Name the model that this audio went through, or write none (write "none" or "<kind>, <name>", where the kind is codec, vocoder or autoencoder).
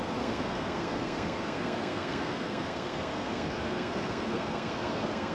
codec, SNAC